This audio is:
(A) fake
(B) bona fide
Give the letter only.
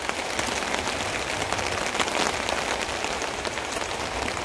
B